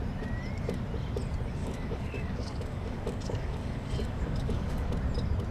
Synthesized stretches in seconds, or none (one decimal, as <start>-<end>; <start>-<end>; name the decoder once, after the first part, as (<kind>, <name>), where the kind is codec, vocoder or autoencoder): 1.6-4.9 (codec, DAC)